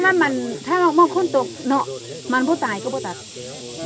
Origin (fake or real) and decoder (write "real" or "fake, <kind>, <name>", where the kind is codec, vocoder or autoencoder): real